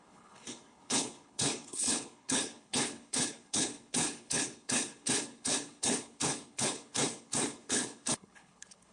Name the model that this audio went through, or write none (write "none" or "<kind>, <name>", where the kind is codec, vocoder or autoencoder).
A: codec, HILCodec